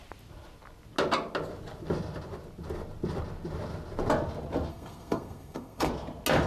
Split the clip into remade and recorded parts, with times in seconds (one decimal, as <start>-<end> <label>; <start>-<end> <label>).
0.0-4.7 recorded; 4.7-5.9 remade; 5.9-6.5 recorded